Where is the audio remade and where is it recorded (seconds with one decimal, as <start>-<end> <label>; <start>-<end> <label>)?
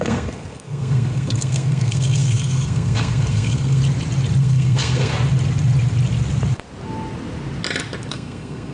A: 0.0-3.8 remade; 3.8-4.4 recorded; 4.4-5.1 remade; 5.1-8.1 recorded; 8.1-8.7 remade